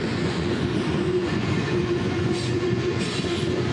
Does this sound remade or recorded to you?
remade